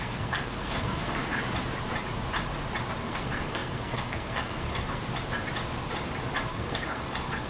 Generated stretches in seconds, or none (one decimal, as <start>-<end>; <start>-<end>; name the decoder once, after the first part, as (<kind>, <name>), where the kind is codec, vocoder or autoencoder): 0.0-1.2 (codec, SNAC); 3.0-5.0; 6.5-7.5